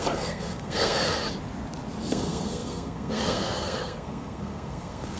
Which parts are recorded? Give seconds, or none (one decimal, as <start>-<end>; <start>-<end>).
1.1-2.1